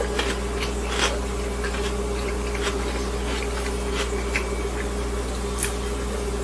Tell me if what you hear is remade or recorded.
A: recorded